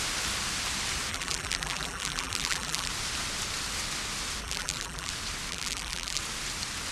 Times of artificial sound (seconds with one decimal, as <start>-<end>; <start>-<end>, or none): 1.1-2.9; 4.4-5.1; 5.5-6.2